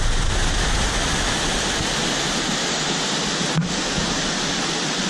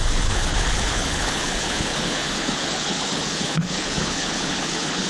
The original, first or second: first